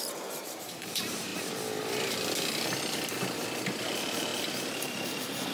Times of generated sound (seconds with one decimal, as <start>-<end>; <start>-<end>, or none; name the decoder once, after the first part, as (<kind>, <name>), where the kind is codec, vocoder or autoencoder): 0.0-1.3 (vocoder, BigVGAN v2); 3.8-4.3; 4.9-5.5